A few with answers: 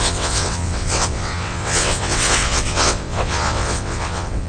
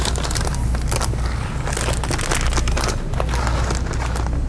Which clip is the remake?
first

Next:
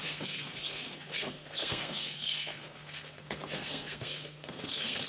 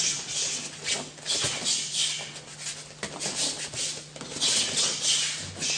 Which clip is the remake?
first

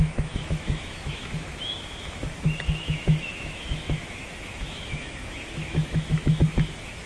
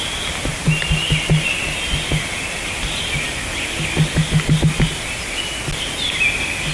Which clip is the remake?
first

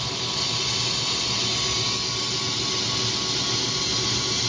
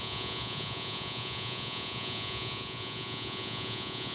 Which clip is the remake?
second